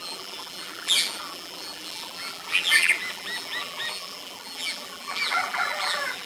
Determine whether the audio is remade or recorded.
remade